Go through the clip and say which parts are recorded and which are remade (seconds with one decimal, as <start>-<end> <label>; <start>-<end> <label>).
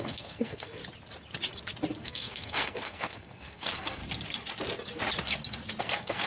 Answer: 0.0-0.8 remade; 0.8-2.0 recorded; 2.0-4.0 remade; 4.0-5.8 recorded; 5.8-6.3 remade